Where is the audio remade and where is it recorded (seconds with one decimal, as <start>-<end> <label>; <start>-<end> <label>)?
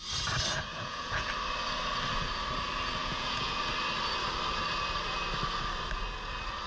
0.0-0.7 recorded; 0.7-1.3 remade; 1.3-3.0 recorded; 3.0-3.6 remade; 3.6-6.7 recorded